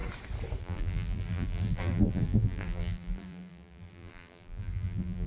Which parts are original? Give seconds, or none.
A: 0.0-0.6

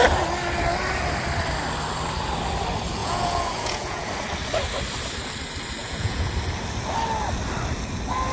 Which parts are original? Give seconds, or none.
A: 0.0-3.0; 4.1-5.8; 6.3-8.3